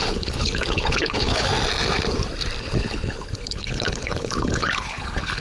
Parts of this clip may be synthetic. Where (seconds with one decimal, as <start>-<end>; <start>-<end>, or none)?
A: 0.0-1.5; 2.6-5.4